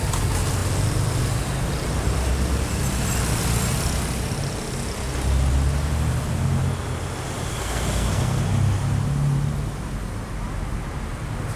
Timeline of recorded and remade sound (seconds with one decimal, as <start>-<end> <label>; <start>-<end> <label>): 0.0-7.5 recorded; 7.5-8.4 remade; 8.4-11.6 recorded